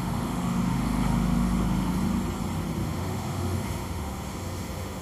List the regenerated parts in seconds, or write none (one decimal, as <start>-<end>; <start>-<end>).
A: 0.0-1.9; 2.8-5.0